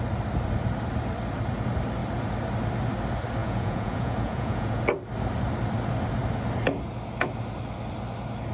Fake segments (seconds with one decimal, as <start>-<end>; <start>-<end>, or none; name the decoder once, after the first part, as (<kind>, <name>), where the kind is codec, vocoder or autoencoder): 3.4-4.8 (vocoder, Vocos)